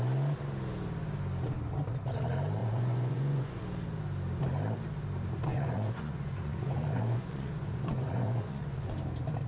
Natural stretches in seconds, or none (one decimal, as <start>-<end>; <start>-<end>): 0.0-2.6; 3.6-5.5; 8.9-9.5